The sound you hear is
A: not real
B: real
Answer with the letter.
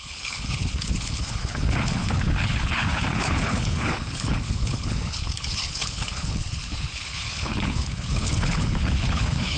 A